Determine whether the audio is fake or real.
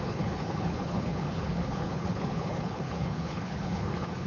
fake